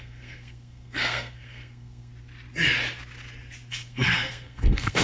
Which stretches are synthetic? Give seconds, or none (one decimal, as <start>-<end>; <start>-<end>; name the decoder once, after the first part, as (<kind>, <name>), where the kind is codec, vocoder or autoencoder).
0.0-2.1 (codec, SNAC); 3.7-5.0